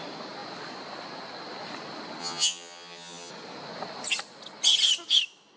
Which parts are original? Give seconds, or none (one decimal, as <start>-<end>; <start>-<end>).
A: 0.0-2.2; 3.3-5.6